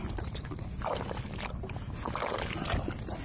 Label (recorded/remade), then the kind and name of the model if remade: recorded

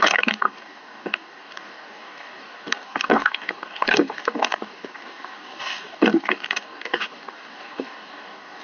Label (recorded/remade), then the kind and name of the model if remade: remade, codec, DAC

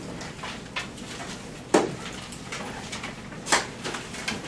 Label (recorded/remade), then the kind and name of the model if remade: recorded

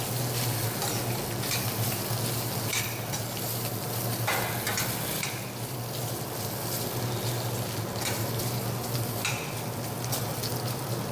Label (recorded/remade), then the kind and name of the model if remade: recorded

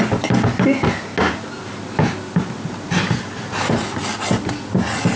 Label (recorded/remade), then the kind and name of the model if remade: recorded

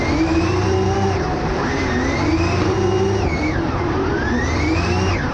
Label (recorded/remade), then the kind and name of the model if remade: remade, vocoder, BigVGAN v2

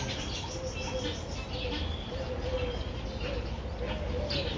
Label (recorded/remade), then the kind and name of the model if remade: recorded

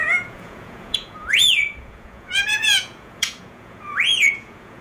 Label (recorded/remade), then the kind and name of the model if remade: remade, vocoder, Vocos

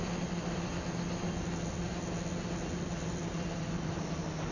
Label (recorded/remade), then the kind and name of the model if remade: recorded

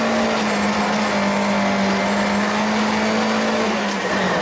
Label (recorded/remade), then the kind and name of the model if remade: recorded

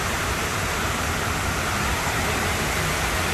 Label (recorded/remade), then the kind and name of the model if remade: remade, vocoder, BigVGAN v2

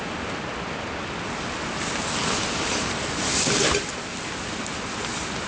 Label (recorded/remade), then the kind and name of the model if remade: recorded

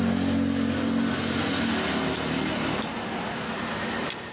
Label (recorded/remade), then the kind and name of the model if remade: recorded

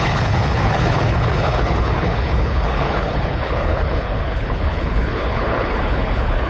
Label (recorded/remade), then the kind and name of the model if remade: remade, codec, HILCodec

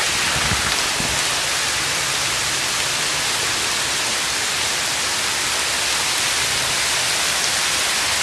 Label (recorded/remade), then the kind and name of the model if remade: recorded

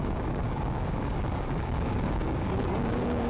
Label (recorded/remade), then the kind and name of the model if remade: remade, codec, DAC